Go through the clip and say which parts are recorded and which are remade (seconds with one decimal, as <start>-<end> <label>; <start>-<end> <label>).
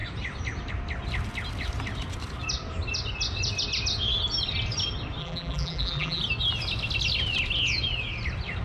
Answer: 0.0-5.2 recorded; 5.2-6.2 remade; 6.2-8.6 recorded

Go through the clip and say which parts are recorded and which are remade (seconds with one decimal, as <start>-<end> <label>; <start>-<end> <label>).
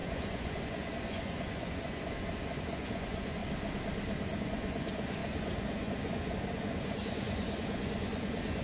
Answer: 0.0-3.4 remade; 3.4-4.4 recorded; 4.4-8.6 remade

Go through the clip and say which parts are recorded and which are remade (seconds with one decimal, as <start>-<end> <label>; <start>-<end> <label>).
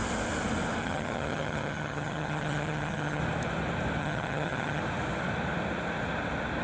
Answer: 0.0-0.8 recorded; 0.8-3.2 remade; 3.2-4.0 recorded; 4.0-4.8 remade; 4.8-6.6 recorded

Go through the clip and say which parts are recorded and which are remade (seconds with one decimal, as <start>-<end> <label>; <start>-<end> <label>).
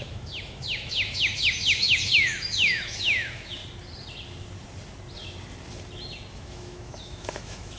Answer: 0.0-3.6 remade; 3.6-6.3 recorded; 6.3-7.8 remade